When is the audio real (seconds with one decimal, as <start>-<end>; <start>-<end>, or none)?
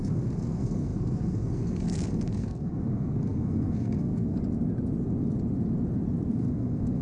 4.4-6.3